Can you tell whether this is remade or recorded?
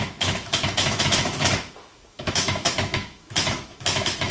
remade